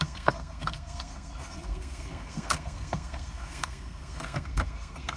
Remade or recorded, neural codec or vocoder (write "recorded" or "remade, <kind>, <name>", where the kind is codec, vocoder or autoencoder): remade, codec, SNAC